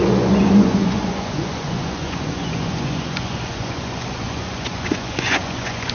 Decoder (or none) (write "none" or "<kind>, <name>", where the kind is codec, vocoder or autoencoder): vocoder, Vocos